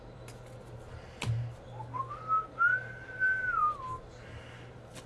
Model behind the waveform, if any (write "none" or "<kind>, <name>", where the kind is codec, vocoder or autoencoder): none